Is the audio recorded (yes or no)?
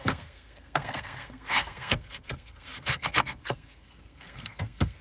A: no